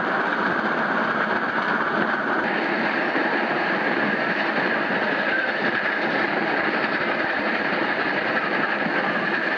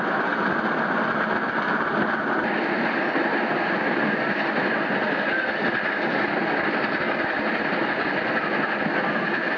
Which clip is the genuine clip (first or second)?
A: second